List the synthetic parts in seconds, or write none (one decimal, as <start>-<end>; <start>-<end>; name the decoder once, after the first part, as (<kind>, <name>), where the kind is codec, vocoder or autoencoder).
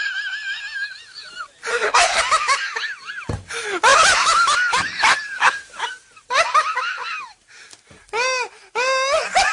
1.7-2.2 (codec, SNAC)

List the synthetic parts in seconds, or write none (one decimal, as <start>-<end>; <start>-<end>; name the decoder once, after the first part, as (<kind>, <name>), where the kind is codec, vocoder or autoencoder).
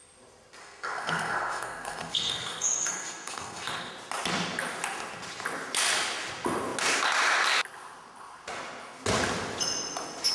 0.6-3.9 (codec, SNAC)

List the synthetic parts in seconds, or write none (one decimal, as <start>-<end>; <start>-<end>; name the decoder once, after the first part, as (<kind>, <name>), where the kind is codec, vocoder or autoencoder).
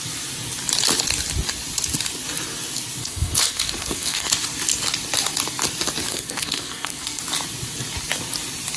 3.0-4.3 (codec, SNAC); 6.1-7.2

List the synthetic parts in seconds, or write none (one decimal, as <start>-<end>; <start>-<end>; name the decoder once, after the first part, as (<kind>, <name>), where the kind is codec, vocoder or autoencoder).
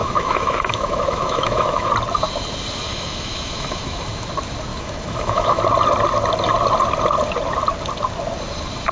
0.0-1.9 (autoencoder, DAC-VAE); 2.9-4.2; 4.7-5.6